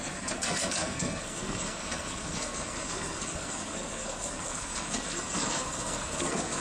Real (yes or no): no